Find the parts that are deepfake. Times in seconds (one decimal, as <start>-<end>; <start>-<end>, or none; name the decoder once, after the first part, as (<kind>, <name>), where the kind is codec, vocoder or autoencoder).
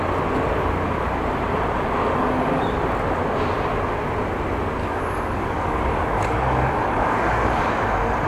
2.0-2.6 (codec, DAC); 4.8-7.7